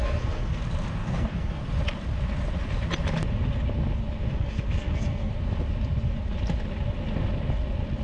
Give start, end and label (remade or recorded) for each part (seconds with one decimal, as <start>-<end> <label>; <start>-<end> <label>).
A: 0.0-0.6 remade; 0.6-1.0 recorded; 1.0-1.6 remade; 1.6-4.2 recorded; 4.2-5.3 remade; 5.3-8.0 recorded